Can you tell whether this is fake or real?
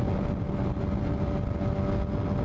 real